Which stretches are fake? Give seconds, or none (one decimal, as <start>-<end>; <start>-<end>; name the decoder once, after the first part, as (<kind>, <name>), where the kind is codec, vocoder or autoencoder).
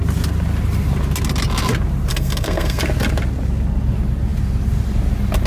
2.1-2.8 (codec, SNAC)